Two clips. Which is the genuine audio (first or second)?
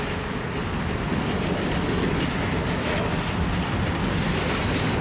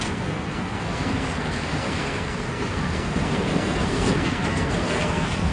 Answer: first